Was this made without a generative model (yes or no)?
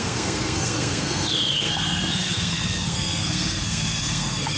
no